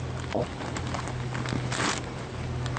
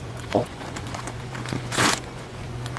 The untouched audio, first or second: first